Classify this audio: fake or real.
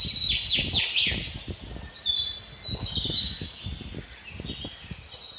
real